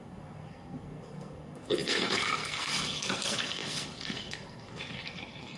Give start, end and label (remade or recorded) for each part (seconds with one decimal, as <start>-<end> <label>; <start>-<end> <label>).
0.0-5.6 remade